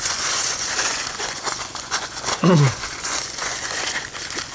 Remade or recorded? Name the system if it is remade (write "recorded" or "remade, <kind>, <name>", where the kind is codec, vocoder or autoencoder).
remade, vocoder, Vocos